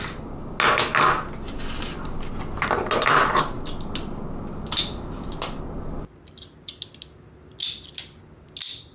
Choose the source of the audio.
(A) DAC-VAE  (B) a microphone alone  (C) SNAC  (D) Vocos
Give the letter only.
B